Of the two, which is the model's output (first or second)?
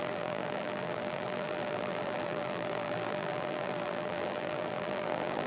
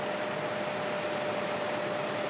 first